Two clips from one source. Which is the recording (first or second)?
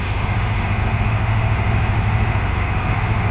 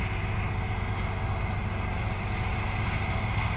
second